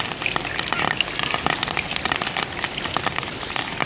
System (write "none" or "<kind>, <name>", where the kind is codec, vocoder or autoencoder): none